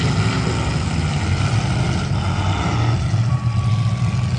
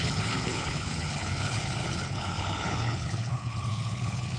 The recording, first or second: first